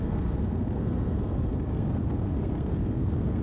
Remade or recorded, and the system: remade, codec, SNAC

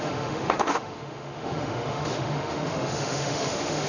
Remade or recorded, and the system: remade, autoencoder, DAC-VAE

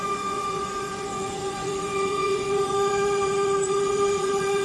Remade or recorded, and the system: remade, vocoder, Vocos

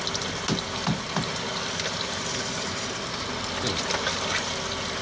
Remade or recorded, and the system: recorded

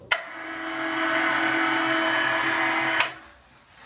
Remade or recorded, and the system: recorded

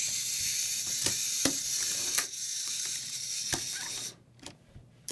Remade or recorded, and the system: remade, vocoder, BigVGAN v2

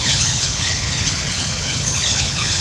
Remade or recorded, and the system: remade, codec, HILCodec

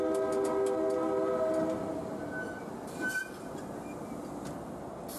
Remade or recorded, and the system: recorded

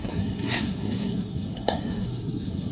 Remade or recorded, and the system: remade, codec, SNAC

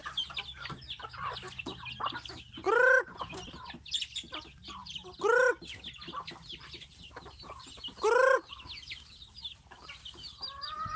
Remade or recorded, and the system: recorded